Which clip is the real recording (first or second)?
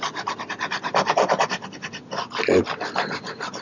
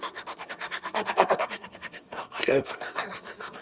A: first